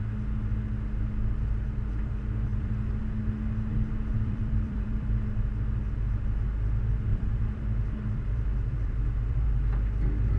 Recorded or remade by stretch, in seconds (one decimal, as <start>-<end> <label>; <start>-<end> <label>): 0.0-2.5 recorded; 2.5-3.0 remade; 3.0-4.1 recorded; 4.1-5.8 remade; 5.8-7.1 recorded; 7.1-9.6 remade; 9.6-10.4 recorded